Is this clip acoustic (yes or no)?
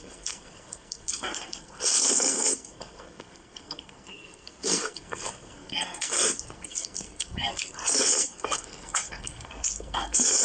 no